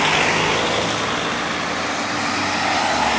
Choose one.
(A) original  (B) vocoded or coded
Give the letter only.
A